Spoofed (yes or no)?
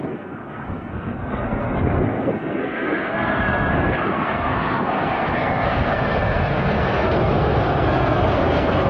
yes